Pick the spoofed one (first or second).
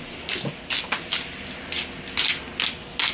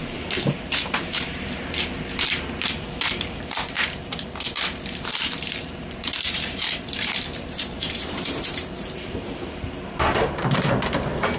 second